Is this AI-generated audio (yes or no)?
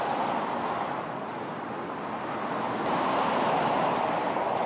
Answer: no